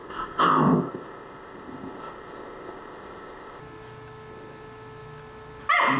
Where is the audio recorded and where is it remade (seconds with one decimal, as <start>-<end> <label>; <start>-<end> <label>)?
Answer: 0.0-3.6 remade; 3.6-6.0 recorded